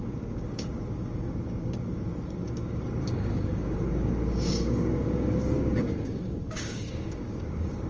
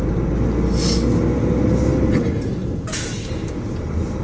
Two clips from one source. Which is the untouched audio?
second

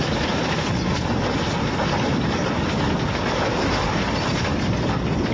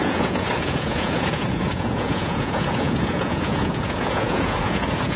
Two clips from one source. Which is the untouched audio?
first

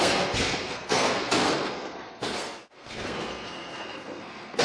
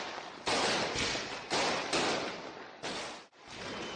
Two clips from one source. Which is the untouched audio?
second